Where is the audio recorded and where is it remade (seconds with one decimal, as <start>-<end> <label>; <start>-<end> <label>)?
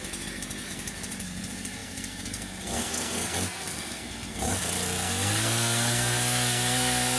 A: 0.0-7.2 remade